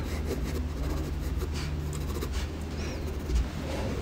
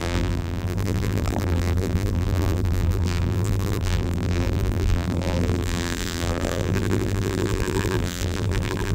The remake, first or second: second